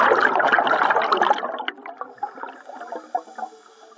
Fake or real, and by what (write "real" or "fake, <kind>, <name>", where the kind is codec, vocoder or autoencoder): real